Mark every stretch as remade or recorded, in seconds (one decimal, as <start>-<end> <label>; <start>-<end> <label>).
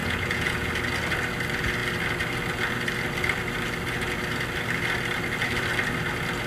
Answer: 0.0-0.7 remade; 0.7-6.5 recorded